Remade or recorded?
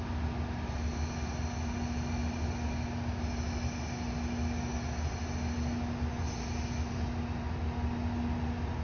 recorded